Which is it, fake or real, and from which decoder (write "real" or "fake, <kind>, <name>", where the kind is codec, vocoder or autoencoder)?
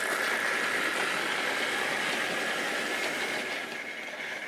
real